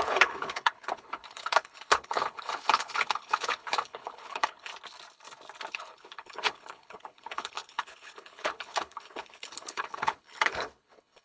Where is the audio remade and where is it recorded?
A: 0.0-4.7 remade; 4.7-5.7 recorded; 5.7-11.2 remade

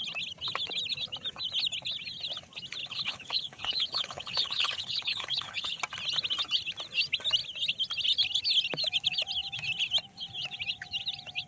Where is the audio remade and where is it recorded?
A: 0.0-2.8 recorded; 2.8-5.8 remade; 5.8-11.5 recorded

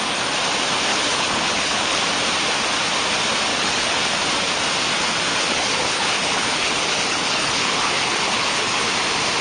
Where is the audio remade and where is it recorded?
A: 0.0-0.9 recorded; 0.9-2.0 remade; 2.0-3.5 recorded; 3.5-4.2 remade; 4.2-5.3 recorded; 5.3-8.9 remade; 8.9-9.4 recorded

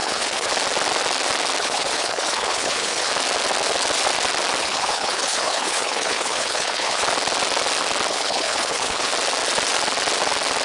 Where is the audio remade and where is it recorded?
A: 0.0-0.5 remade; 0.5-1.6 recorded; 1.6-3.1 remade; 3.1-4.6 recorded; 4.6-7.0 remade; 7.0-8.1 recorded; 8.1-9.1 remade; 9.1-10.6 recorded

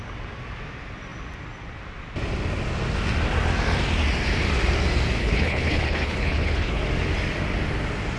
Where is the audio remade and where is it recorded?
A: 0.0-5.2 recorded; 5.2-6.8 remade; 6.8-8.2 recorded